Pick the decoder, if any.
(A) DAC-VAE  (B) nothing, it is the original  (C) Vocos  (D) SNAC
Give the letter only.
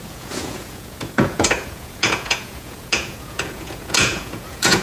C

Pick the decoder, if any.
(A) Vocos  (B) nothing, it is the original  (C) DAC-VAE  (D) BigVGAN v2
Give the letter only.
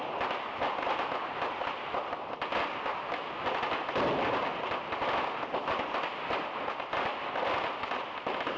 B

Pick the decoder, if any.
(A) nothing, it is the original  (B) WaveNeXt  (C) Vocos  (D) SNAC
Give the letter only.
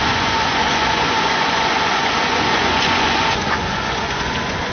C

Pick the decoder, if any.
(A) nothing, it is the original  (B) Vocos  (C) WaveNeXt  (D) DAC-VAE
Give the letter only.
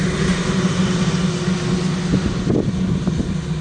A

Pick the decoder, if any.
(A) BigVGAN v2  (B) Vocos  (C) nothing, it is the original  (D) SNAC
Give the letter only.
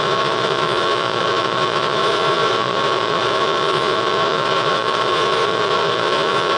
B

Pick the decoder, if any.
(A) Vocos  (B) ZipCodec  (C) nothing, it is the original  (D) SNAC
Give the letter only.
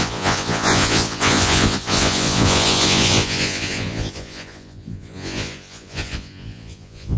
A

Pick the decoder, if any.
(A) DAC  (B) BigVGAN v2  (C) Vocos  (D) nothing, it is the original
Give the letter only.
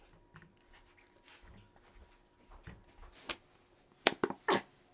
D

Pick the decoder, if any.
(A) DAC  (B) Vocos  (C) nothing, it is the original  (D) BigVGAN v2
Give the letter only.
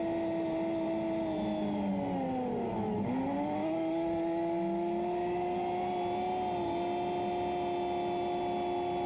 C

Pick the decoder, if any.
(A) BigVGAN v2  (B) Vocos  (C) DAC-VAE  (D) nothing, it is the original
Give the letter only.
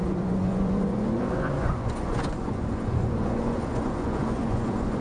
B